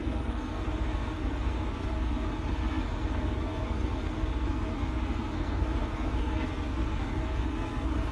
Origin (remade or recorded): remade